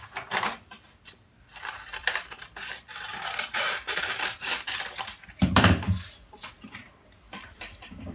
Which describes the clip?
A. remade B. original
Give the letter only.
A